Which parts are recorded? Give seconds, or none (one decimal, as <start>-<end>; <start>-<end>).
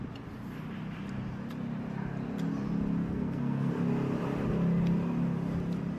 0.0-3.0; 3.7-6.0